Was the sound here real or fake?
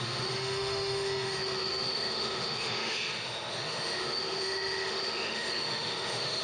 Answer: fake